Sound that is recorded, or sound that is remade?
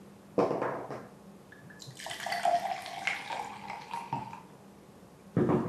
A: recorded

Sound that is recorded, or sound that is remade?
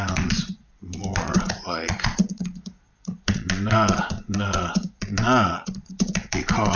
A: remade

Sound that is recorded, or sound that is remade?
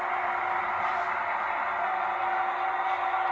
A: recorded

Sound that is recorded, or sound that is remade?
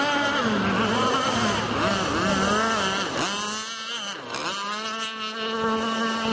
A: recorded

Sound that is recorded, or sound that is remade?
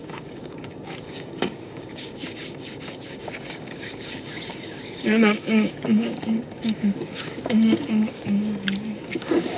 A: remade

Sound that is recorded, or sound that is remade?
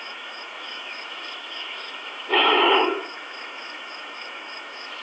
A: remade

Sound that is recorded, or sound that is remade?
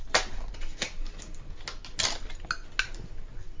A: recorded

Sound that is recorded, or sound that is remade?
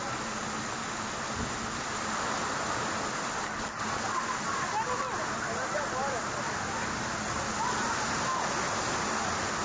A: recorded